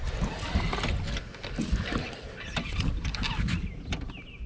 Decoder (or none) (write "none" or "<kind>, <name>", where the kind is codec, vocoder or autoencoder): none